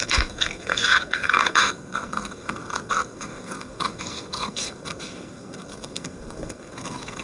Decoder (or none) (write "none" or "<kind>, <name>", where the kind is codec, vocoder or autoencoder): codec, SNAC